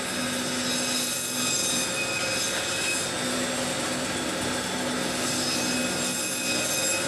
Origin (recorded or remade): recorded